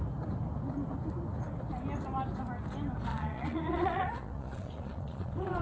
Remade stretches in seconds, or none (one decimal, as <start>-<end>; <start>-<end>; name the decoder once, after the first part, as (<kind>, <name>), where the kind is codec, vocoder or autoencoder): 3.1-5.6 (vocoder, Vocos)